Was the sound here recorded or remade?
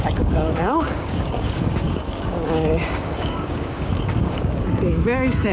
remade